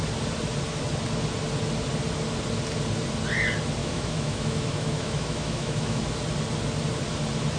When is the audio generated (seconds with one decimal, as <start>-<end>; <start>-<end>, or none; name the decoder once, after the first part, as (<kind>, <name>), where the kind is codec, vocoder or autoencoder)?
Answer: 3.8-6.0 (autoencoder, DAC-VAE)